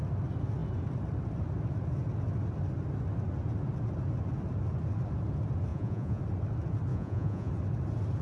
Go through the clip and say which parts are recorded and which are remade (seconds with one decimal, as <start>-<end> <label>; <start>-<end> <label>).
0.0-5.7 recorded; 5.7-6.2 remade; 6.2-6.9 recorded; 6.9-7.5 remade; 7.5-8.2 recorded